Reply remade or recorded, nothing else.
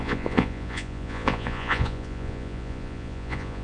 remade